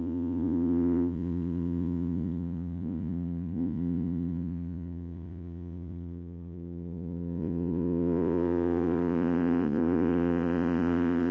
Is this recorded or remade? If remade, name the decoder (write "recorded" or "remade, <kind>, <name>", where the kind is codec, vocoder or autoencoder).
remade, vocoder, Vocos